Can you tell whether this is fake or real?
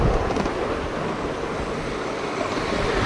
real